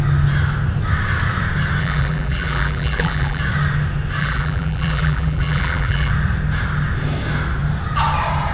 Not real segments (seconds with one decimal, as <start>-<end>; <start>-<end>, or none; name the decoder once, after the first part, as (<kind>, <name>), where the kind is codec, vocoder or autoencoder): 1.8-3.4 (vocoder, BigVGAN v2); 4.2-6.1